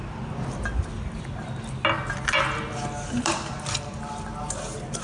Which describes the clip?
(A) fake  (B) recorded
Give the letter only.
B